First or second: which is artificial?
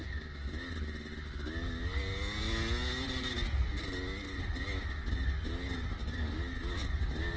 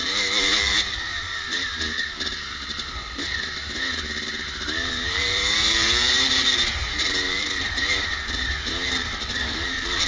second